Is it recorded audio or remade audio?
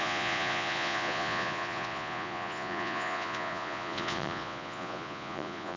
remade